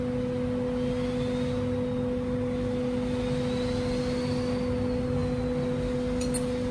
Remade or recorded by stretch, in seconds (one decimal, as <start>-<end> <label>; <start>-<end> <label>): 0.0-6.7 recorded